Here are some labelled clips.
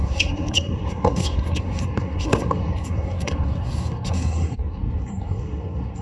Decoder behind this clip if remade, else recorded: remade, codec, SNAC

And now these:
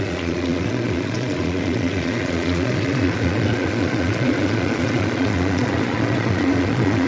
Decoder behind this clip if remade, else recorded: remade, vocoder, Vocos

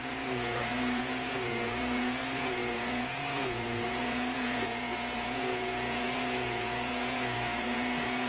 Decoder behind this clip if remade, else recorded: remade, vocoder, Vocos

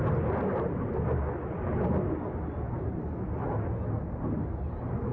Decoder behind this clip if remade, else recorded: recorded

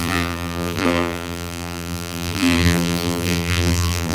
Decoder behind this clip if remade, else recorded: remade, vocoder, BigVGAN v2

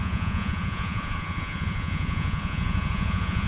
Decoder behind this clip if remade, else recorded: remade, vocoder, Vocos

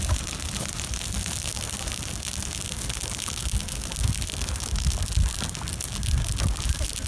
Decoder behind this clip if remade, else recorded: recorded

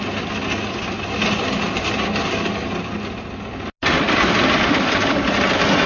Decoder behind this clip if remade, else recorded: recorded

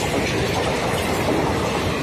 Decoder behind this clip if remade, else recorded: recorded